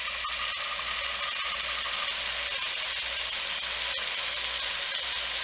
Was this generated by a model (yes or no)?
no